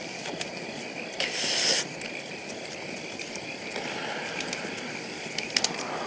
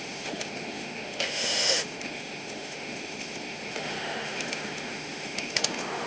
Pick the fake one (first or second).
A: second